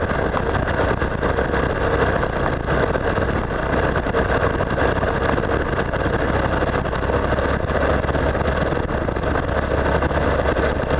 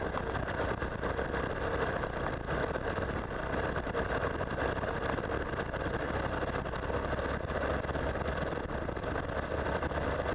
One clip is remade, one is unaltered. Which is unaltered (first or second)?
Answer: first